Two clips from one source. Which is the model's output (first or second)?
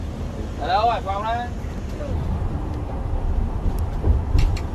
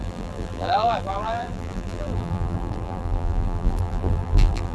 second